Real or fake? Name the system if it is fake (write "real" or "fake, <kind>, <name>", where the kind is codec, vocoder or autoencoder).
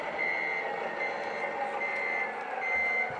real